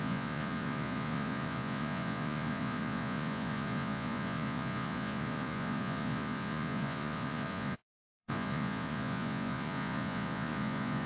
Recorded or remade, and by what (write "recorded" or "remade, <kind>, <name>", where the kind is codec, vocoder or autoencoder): remade, vocoder, Vocos